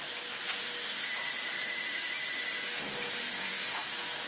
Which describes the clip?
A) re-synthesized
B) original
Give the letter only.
B